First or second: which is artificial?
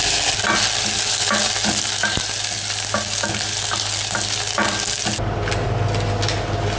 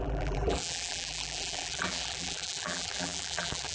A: second